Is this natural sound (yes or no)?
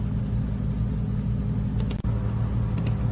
yes